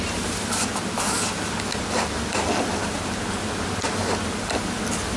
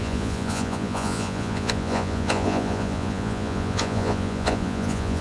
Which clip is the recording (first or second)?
first